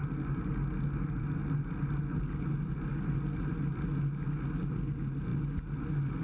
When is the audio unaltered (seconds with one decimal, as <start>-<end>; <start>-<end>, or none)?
0.0-6.2